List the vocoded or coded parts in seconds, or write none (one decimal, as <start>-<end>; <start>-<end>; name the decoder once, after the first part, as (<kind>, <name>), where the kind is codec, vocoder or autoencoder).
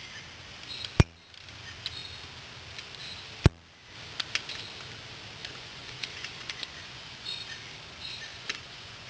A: 5.4-7.4 (vocoder, Vocos); 8.3-9.1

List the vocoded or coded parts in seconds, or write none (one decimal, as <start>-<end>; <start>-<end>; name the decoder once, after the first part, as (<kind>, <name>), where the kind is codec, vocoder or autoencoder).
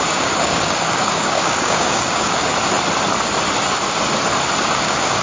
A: 0.0-2.5 (codec, DAC); 4.7-5.2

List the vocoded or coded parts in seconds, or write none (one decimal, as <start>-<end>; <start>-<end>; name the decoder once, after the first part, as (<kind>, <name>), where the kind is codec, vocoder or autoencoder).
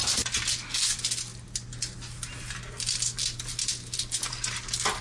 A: none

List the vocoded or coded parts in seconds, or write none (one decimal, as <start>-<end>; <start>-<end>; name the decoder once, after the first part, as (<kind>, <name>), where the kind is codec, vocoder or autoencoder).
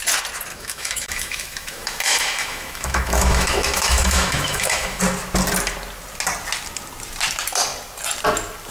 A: 0.5-5.0 (autoencoder, DAC-VAE)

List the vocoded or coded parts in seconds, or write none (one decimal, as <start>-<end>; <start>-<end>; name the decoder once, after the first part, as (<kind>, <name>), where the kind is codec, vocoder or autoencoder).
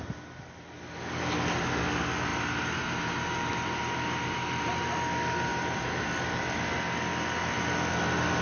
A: 2.3-4.8 (vocoder, BigVGAN v2); 5.5-6.1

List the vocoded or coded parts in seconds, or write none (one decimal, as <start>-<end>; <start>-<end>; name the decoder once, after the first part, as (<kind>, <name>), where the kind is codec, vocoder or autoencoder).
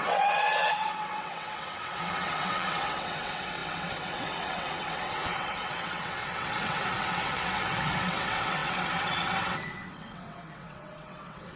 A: 0.0-11.6 (vocoder, WaveNeXt)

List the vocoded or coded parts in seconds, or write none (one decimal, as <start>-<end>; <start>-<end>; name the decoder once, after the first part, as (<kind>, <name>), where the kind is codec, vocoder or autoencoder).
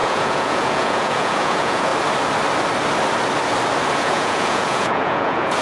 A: 0.0-1.9 (vocoder, Vocos); 4.0-5.6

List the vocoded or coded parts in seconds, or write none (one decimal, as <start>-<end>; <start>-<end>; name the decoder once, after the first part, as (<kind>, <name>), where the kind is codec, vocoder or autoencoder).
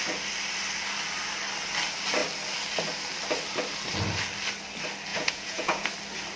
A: 5.1-5.9 (vocoder, Vocos)